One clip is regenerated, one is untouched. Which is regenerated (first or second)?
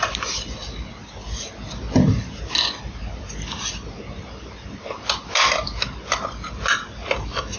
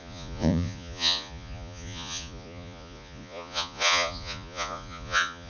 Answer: second